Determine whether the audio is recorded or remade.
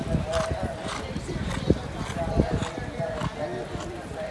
recorded